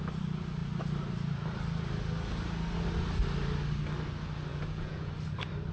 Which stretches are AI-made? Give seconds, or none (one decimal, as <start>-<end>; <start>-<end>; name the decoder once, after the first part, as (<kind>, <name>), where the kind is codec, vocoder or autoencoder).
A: 4.5-5.1 (vocoder, Vocos)